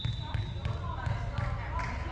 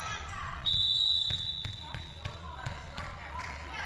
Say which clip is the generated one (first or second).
second